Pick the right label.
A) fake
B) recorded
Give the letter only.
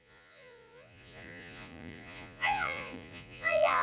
A